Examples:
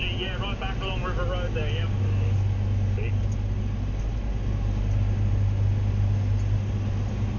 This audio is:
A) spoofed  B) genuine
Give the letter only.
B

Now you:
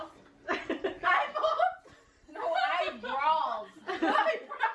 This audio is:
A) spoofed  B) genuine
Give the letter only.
B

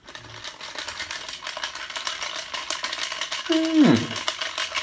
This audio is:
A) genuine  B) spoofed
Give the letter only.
A